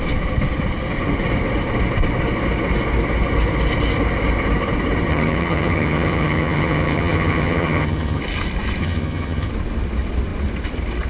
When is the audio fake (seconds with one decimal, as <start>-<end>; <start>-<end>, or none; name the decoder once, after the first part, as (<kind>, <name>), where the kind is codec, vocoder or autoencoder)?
5.1-8.2 (vocoder, HiFi-GAN); 8.8-9.5